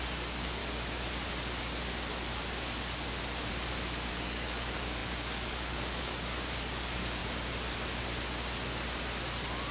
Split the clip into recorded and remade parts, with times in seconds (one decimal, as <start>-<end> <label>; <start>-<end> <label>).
0.0-0.6 remade; 0.6-4.1 recorded; 4.1-7.2 remade; 7.2-9.7 recorded